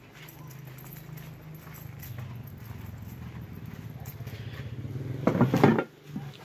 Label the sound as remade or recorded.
recorded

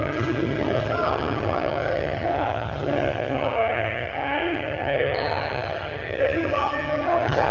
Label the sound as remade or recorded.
remade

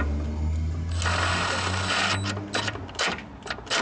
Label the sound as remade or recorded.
recorded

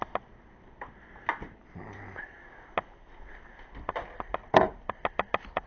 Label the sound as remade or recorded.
recorded